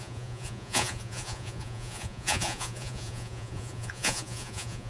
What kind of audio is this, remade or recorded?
remade